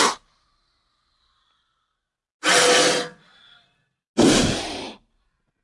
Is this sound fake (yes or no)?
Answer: no